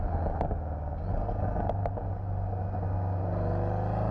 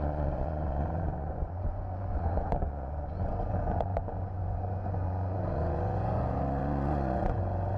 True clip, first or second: first